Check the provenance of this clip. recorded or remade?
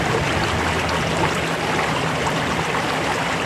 recorded